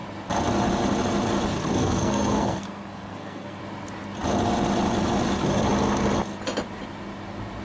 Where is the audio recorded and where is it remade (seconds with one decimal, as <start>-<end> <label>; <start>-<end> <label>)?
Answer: 0.0-1.8 recorded; 1.8-3.6 remade; 3.6-7.6 recorded

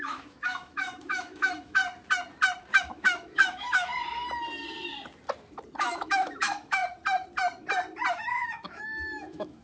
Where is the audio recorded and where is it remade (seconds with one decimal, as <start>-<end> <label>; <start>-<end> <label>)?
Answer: 0.0-1.8 remade; 1.8-2.8 recorded; 2.8-3.9 remade; 3.9-5.8 recorded; 5.8-6.8 remade; 6.8-8.1 recorded; 8.1-9.6 remade